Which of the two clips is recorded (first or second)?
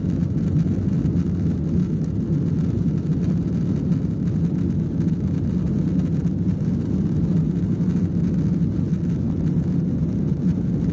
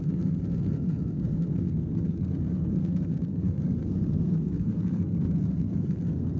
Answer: first